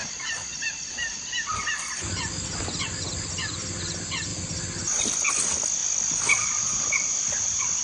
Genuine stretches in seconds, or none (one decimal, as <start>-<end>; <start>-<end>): 2.5-5.8

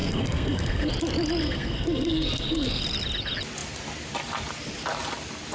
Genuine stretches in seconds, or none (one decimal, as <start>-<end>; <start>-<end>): 0.9-1.4; 2.8-5.5

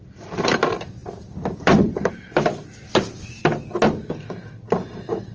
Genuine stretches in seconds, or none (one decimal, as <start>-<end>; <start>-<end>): 2.5-3.1; 3.5-4.7

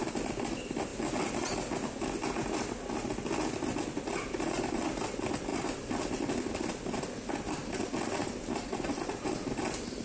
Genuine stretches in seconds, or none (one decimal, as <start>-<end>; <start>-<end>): 0.0-5.5; 6.0-8.2; 9.6-10.0